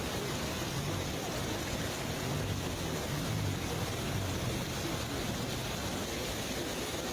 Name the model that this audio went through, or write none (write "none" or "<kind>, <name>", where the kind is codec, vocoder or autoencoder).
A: none